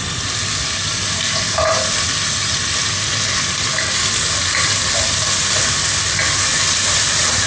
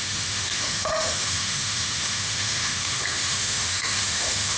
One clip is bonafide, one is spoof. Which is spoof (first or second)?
second